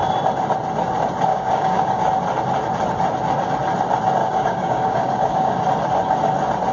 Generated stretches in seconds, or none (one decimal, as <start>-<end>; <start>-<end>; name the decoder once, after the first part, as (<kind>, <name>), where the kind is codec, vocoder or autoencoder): 1.3-2.1 (codec, DAC); 4.2-5.6